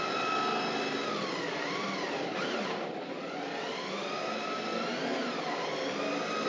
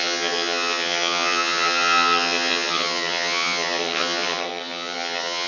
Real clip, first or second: first